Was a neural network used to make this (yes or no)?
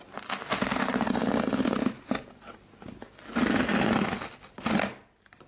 no